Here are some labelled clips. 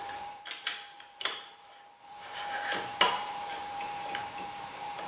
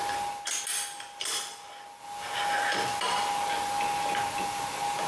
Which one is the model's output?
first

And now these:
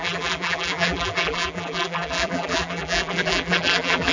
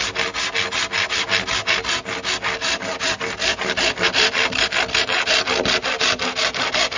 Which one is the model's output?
first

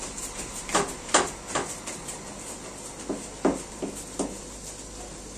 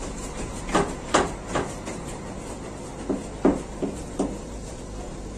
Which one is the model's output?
second